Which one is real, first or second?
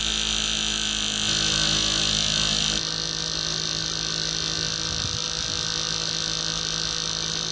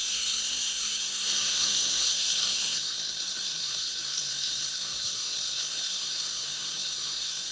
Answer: first